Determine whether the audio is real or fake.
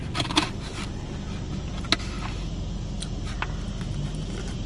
real